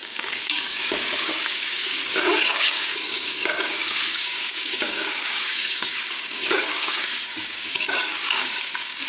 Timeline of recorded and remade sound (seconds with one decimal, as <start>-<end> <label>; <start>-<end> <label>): 0.0-9.1 remade